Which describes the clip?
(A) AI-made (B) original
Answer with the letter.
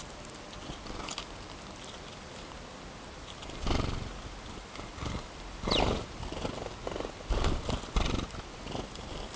B